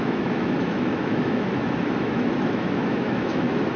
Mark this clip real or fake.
fake